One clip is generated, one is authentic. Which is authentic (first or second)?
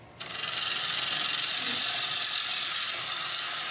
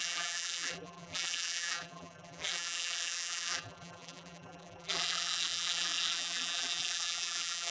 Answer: first